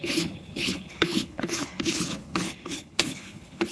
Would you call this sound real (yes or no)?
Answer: no